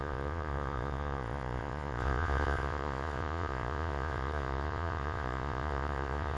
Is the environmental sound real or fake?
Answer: fake